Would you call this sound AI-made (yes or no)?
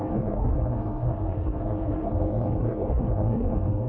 yes